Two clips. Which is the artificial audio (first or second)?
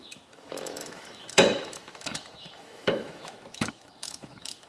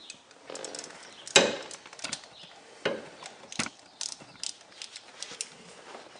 first